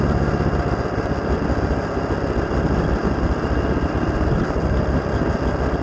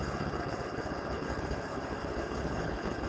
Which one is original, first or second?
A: first